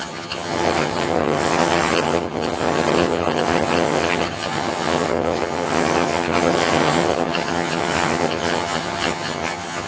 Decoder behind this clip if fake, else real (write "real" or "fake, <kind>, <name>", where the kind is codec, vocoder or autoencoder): fake, vocoder, HiFi-GAN